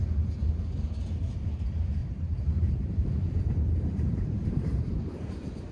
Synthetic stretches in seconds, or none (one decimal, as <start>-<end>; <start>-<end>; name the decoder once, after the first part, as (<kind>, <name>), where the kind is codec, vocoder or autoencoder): 2.0-5.3 (vocoder, BigVGAN v2)